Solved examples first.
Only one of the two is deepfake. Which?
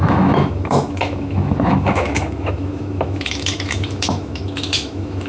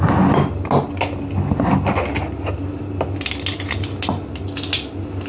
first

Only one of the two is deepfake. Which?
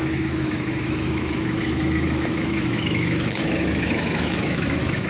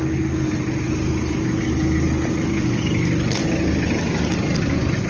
first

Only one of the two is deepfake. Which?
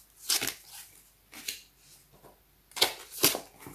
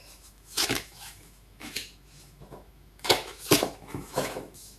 second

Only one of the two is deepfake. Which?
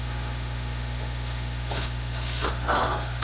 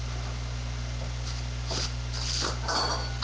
first